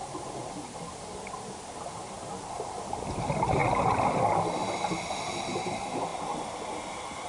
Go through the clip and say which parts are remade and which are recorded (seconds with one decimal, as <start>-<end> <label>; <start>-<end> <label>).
0.0-7.3 recorded